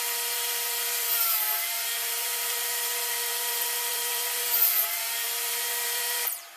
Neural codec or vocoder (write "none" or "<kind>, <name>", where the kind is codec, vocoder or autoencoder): vocoder, BigVGAN v2